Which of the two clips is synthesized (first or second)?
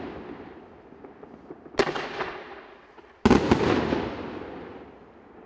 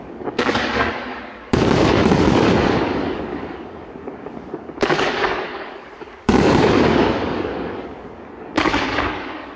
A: second